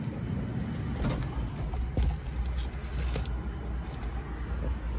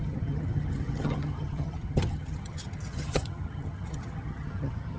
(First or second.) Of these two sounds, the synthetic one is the second